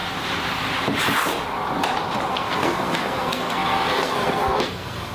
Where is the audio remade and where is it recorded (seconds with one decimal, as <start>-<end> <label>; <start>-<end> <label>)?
0.0-2.3 recorded; 2.3-5.1 remade